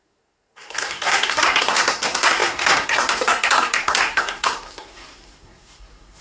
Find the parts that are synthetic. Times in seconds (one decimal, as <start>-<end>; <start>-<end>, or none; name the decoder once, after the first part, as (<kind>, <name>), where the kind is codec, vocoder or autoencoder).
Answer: 0.0-6.2 (codec, SNAC)